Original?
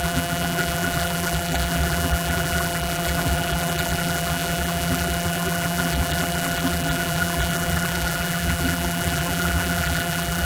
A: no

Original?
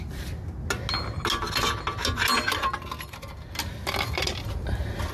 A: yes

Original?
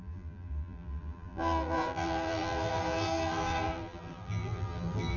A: no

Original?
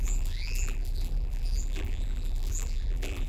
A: no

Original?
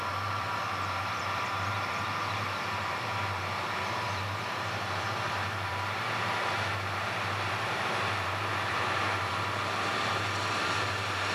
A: no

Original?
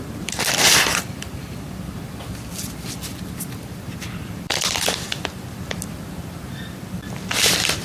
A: no